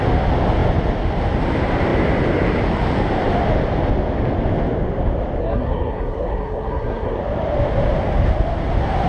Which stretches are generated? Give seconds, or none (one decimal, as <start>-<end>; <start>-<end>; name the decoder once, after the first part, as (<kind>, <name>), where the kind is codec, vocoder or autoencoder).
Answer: 5.4-7.2 (codec, SNAC)